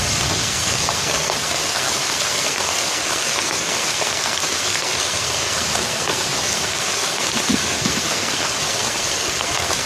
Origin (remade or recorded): remade